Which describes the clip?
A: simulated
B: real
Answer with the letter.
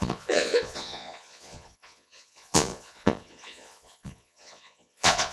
A